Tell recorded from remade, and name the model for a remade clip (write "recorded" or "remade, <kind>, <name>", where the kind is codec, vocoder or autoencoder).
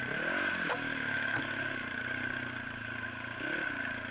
recorded